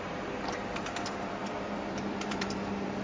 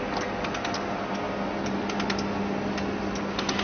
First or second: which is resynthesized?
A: first